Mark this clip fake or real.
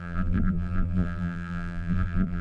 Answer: fake